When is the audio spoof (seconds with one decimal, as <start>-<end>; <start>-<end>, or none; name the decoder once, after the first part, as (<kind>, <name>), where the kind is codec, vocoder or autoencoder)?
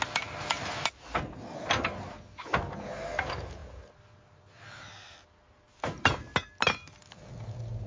none